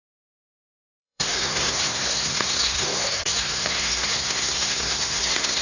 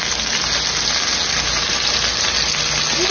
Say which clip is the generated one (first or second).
first